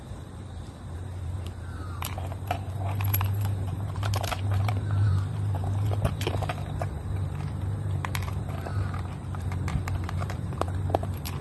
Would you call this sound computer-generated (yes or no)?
yes